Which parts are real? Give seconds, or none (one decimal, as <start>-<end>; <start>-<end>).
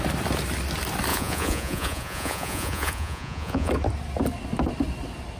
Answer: 0.0-1.1; 3.7-5.4